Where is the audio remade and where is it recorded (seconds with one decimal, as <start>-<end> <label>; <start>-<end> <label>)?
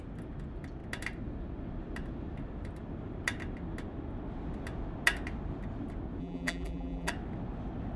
0.0-6.2 recorded; 6.2-7.1 remade; 7.1-8.0 recorded